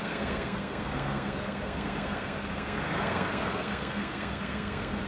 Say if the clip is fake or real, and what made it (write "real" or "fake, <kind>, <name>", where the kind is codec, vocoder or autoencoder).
fake, codec, SNAC